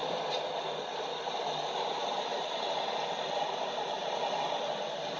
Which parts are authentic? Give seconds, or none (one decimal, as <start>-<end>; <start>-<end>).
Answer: 0.0-5.2

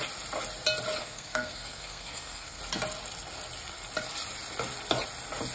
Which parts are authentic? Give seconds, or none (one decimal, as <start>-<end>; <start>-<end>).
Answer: 0.0-1.0; 2.6-5.5

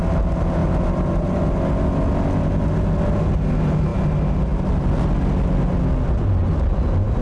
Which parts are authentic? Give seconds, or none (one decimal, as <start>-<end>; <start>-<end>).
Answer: 0.0-7.2

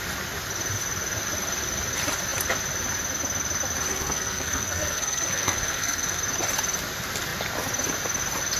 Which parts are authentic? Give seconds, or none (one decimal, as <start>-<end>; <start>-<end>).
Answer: 0.0-3.9; 6.2-8.6

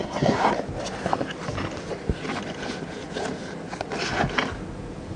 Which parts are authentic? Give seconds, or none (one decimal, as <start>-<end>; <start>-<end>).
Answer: 0.5-5.2